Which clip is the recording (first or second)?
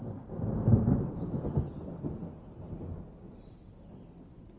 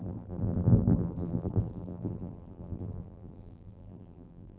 first